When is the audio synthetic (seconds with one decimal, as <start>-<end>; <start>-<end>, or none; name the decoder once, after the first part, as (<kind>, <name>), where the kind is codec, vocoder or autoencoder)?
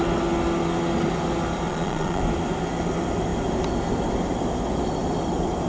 1.7-2.2 (vocoder, Vocos)